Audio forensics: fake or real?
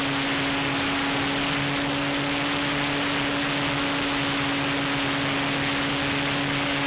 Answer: real